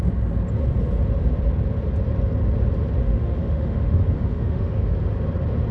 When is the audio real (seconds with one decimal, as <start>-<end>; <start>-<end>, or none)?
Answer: 0.0-3.0; 4.9-5.7